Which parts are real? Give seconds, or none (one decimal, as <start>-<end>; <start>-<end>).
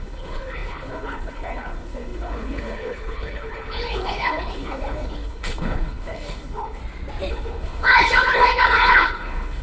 6.8-7.3